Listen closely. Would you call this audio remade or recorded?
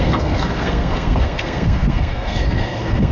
remade